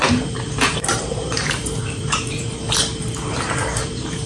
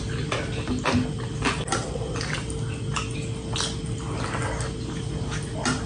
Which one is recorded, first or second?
second